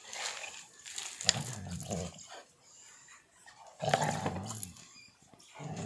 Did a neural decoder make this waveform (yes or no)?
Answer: no